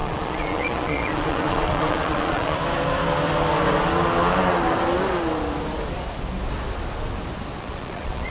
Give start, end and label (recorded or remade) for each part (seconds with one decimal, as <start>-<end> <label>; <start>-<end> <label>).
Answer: 0.0-2.6 remade; 2.6-7.6 recorded; 7.6-8.3 remade